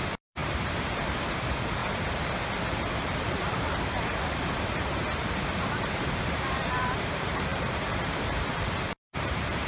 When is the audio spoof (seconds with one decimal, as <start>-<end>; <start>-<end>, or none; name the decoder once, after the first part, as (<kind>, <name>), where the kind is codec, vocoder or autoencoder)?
0.0-1.8 (vocoder, BigVGAN v2); 5.3-9.7

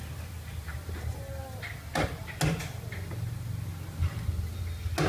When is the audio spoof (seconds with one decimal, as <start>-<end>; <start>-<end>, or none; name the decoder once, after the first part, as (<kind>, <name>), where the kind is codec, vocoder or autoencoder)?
none